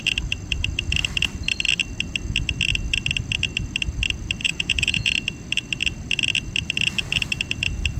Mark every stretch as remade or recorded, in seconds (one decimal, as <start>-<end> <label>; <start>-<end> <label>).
0.0-4.4 recorded; 4.4-5.1 remade; 5.1-8.0 recorded